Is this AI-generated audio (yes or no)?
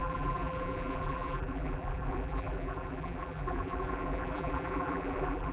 yes